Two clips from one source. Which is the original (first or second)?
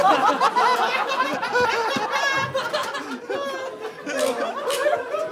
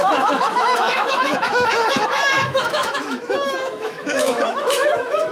first